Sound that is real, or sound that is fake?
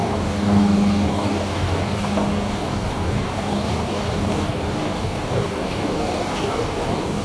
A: fake